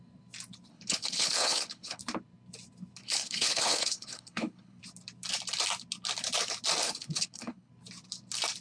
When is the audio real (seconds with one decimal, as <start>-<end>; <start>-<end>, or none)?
0.0-0.7; 2.0-3.0; 4.8-6.8; 7.7-8.6